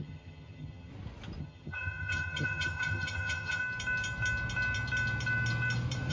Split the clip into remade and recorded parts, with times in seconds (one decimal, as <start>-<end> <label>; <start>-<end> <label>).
0.0-0.9 remade; 0.9-1.4 recorded; 1.4-3.6 remade; 3.6-6.1 recorded